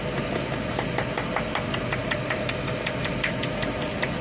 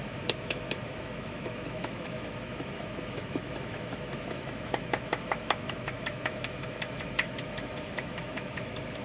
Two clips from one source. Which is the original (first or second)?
first